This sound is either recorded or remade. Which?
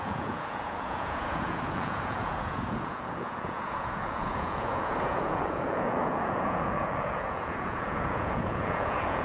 remade